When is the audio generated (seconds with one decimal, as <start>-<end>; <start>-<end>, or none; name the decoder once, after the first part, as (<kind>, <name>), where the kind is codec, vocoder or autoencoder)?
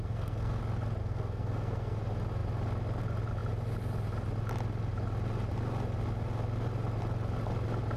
0.0-0.6 (codec, SNAC); 1.0-2.0